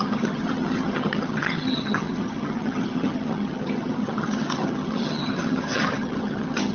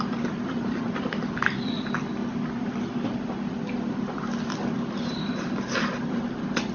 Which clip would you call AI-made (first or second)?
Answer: first